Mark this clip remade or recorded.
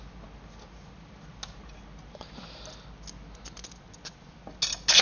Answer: recorded